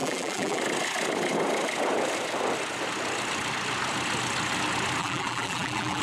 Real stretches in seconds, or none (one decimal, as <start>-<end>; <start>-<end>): 0.6-5.0